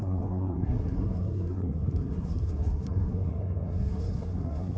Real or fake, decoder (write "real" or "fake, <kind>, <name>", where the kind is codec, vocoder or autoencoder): fake, codec, SNAC